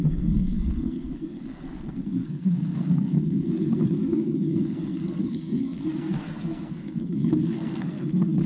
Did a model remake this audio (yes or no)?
yes